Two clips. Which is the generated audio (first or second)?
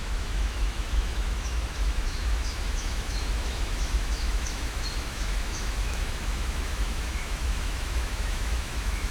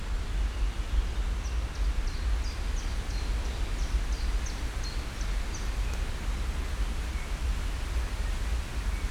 first